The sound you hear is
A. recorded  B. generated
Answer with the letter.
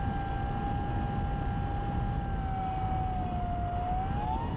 A